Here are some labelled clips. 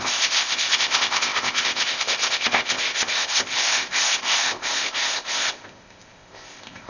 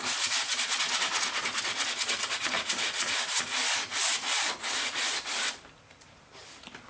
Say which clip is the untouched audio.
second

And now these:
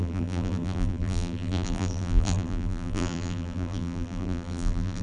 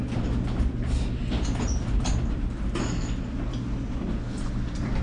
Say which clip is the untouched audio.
second